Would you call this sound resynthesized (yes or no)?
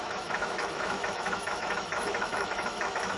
yes